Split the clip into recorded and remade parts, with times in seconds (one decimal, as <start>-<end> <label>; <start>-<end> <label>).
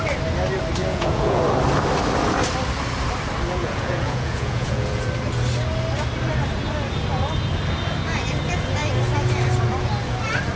0.0-0.8 recorded; 0.8-1.4 remade; 1.4-3.6 recorded; 3.6-5.1 remade; 5.1-10.6 recorded